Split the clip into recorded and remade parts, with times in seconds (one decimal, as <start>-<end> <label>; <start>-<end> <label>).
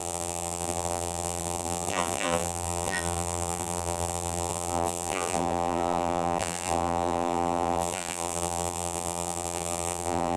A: 0.0-10.4 remade